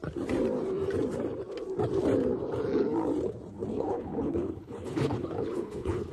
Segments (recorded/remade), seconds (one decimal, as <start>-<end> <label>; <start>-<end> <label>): 0.0-3.7 recorded; 3.7-6.1 remade